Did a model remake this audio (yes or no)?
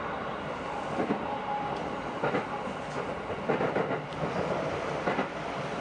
no